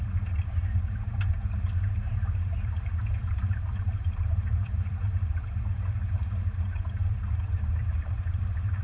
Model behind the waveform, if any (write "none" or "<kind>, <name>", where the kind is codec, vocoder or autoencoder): vocoder, BigVGAN v2